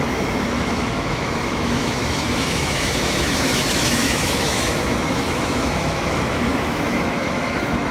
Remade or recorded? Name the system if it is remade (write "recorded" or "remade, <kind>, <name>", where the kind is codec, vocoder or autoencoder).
remade, autoencoder, DAC-VAE